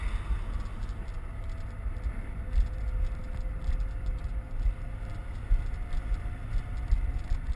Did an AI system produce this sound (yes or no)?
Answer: no